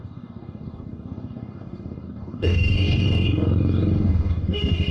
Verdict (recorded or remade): remade